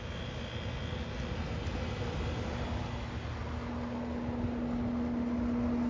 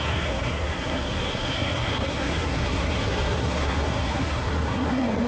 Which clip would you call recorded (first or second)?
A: first